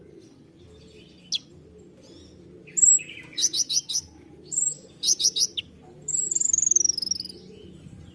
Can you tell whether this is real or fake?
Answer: real